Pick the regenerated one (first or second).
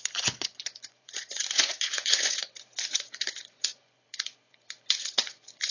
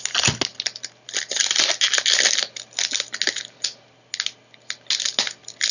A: first